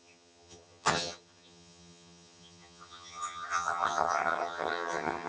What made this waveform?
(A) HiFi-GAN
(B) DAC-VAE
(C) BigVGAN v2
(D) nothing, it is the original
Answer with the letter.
A